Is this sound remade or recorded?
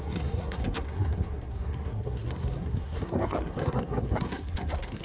remade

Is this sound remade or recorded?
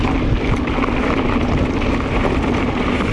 recorded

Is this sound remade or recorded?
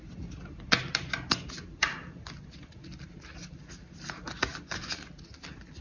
recorded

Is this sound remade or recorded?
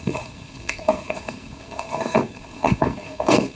remade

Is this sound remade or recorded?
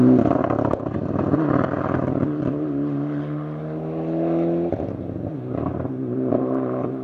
recorded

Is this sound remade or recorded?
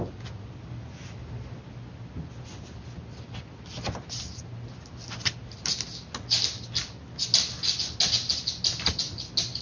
recorded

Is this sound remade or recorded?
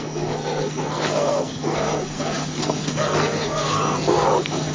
remade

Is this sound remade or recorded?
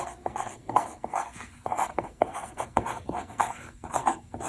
remade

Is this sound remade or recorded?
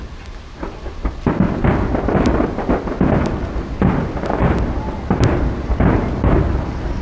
recorded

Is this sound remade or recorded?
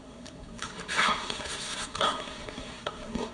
remade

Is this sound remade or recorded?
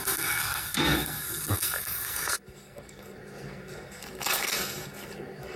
remade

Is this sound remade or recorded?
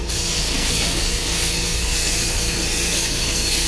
remade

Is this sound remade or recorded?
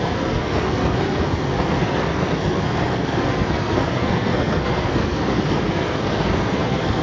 remade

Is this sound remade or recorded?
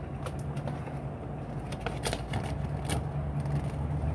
recorded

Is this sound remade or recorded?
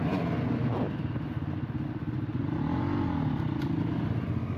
recorded